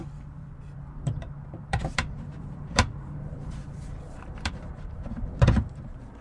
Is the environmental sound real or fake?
fake